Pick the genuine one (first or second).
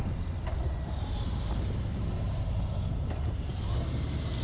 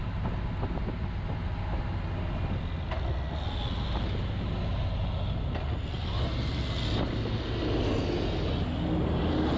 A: second